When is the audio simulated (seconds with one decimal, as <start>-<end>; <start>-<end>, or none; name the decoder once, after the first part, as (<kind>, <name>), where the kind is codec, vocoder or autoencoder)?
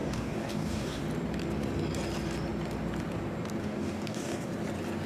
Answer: 0.0-1.0 (codec, DAC); 3.6-4.5